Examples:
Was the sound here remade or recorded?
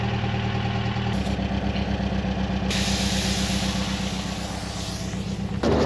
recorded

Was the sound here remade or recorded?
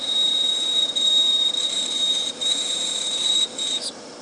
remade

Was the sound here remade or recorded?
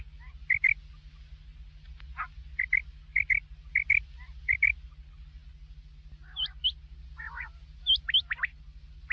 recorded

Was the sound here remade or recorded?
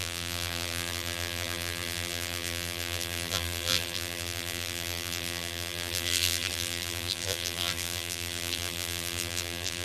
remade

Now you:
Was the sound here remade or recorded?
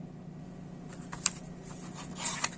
recorded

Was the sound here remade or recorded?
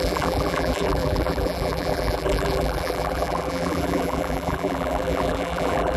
remade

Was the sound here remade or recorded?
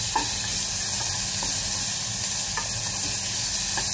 recorded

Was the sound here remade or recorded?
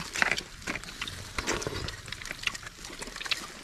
recorded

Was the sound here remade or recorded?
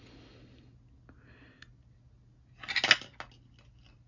recorded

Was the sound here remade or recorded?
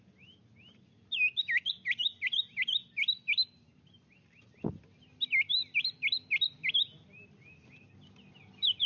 recorded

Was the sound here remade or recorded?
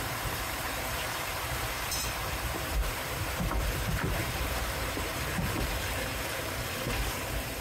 remade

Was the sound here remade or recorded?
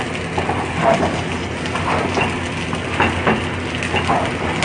recorded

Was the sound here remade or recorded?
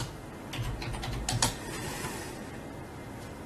recorded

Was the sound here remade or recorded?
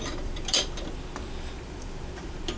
remade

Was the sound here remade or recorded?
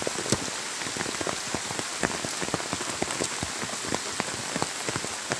recorded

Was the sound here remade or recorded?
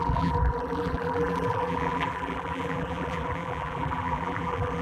remade